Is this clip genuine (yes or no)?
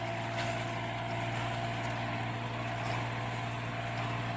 yes